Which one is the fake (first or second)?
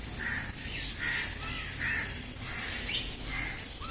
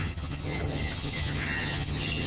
second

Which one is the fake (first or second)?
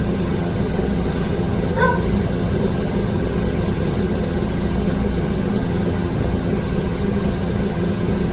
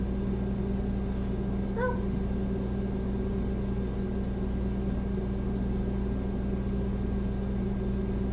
first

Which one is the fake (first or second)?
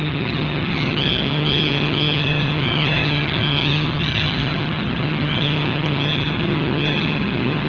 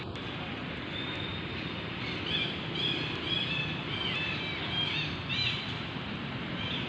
first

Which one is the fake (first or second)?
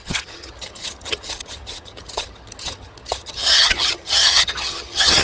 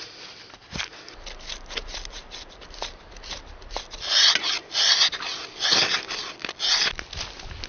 first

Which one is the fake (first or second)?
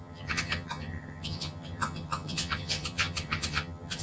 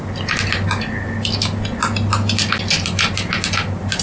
first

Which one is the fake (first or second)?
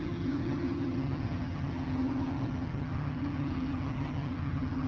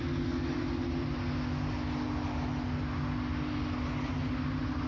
first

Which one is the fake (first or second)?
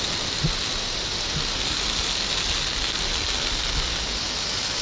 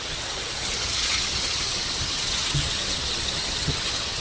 second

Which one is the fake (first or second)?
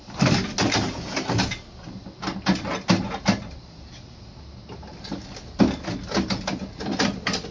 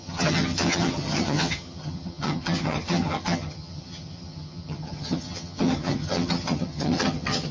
second